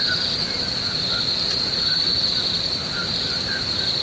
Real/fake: real